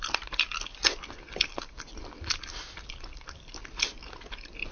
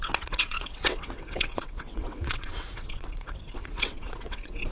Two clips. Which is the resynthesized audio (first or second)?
second